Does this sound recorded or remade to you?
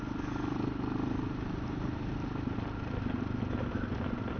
recorded